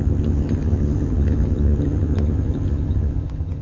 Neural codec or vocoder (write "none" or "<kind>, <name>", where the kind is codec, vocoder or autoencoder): vocoder, HiFi-GAN